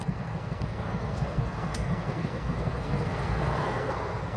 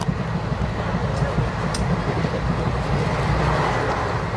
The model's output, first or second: first